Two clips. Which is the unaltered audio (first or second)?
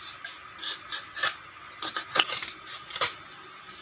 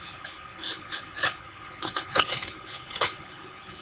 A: first